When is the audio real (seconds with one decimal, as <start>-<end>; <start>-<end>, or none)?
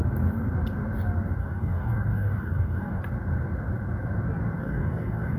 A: 0.0-1.4; 3.0-4.6